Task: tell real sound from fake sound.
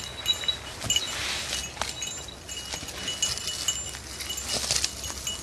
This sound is real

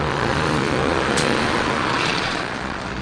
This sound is fake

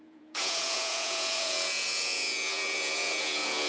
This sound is fake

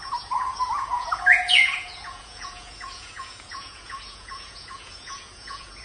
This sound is fake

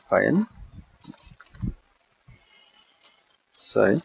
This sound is real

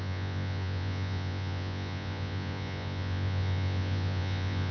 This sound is fake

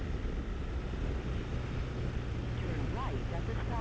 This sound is real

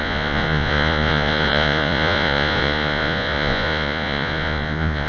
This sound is fake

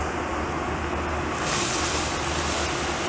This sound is real